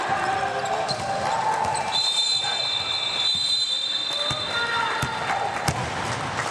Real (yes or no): yes